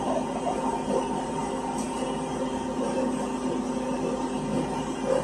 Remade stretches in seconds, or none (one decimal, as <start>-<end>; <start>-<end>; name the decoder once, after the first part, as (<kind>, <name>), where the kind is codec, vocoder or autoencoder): none